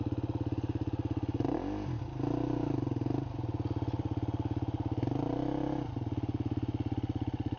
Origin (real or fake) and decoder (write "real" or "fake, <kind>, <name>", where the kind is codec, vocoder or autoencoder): real